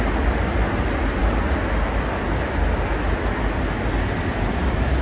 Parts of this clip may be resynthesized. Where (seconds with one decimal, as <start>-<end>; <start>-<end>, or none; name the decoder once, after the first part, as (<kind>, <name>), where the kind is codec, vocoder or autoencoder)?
none